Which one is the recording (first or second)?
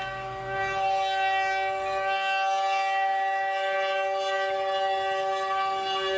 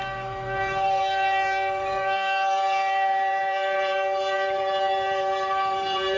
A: first